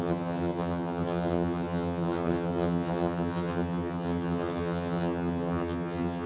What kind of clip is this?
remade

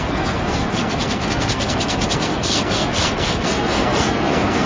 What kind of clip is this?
remade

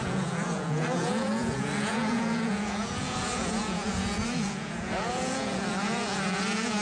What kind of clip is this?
remade